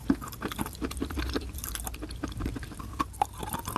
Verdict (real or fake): real